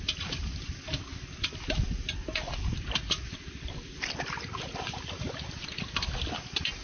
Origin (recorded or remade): recorded